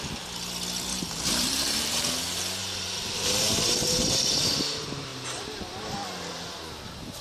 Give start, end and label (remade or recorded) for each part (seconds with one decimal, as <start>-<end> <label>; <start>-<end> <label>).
0.0-0.9 recorded; 0.9-2.0 remade; 2.0-2.6 recorded; 2.6-4.5 remade; 4.5-7.2 recorded